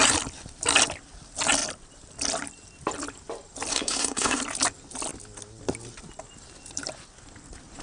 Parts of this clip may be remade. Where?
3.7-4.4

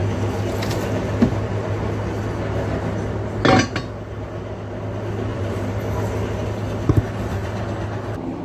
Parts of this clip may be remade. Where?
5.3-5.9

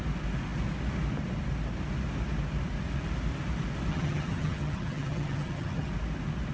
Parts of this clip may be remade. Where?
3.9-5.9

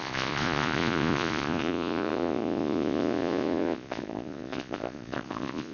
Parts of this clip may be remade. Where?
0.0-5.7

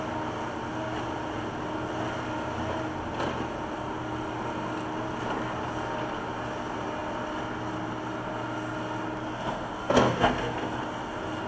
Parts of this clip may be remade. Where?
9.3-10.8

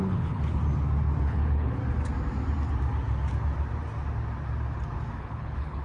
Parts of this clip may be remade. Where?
0.0-0.6; 1.2-1.8; 5.2-5.8

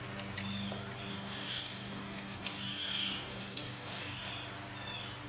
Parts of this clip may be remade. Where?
1.1-4.3